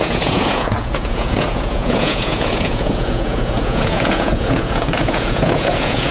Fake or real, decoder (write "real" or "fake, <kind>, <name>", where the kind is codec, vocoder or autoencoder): fake, vocoder, Vocos